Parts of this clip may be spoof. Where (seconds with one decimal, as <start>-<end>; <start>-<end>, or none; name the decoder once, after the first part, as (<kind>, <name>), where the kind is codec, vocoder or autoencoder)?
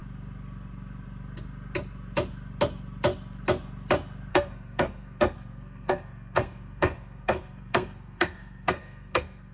4.3-9.5 (codec, SNAC)